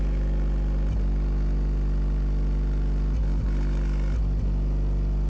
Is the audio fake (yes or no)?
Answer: no